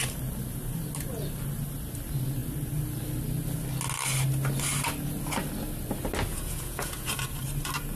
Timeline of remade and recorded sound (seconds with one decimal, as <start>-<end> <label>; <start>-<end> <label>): 0.0-6.3 recorded; 6.3-7.1 remade; 7.1-8.0 recorded